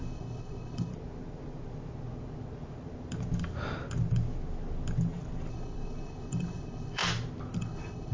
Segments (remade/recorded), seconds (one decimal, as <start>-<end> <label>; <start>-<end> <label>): 0.0-0.9 remade; 0.9-5.5 recorded; 5.5-7.0 remade; 7.0-7.6 recorded; 7.6-8.1 remade